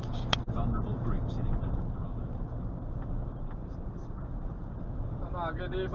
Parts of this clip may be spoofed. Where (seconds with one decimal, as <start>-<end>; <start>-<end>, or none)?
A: none